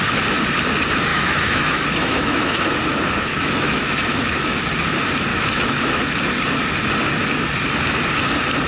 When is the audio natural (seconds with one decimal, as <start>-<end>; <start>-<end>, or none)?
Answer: 0.0-1.1; 2.7-3.3; 4.6-5.3; 6.0-8.7